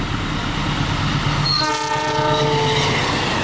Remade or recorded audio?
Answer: recorded